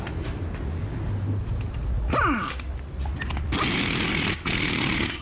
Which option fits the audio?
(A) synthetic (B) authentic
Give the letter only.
B